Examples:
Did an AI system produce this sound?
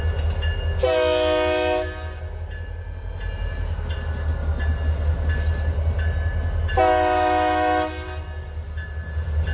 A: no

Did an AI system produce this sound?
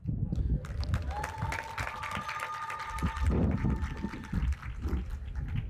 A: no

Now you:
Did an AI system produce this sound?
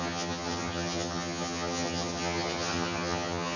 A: yes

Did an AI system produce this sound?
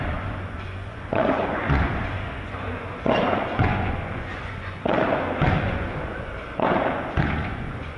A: yes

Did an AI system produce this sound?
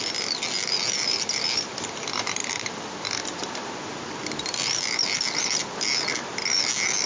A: no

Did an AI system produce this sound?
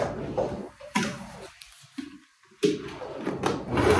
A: no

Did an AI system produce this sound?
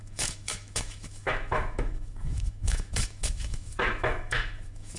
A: yes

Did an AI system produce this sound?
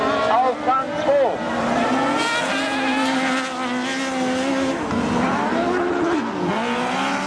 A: no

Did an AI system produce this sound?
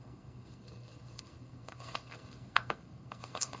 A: yes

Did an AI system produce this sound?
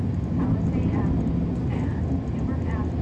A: no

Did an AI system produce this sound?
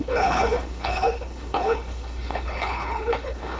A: yes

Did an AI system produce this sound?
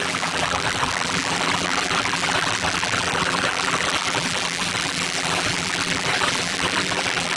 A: yes